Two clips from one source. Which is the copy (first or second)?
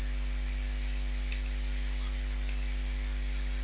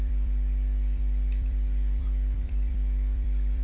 second